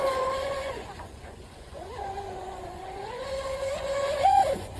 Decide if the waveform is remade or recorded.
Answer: remade